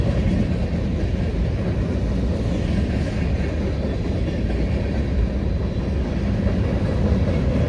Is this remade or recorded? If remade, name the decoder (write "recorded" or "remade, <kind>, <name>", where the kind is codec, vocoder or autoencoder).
recorded